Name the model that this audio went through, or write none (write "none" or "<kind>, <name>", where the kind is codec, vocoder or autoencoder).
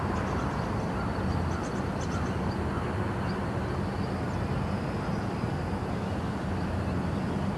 none